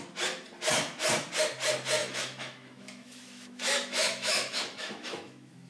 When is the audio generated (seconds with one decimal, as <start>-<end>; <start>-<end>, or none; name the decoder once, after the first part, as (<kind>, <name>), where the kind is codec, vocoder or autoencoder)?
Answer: 2.0-5.7 (autoencoder, DAC-VAE)